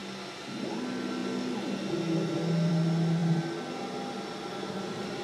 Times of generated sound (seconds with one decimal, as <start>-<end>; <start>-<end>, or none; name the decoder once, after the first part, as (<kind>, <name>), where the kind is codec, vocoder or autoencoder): none